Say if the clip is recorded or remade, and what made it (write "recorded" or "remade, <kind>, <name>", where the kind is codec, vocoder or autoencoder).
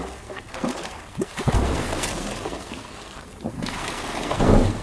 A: remade, codec, SNAC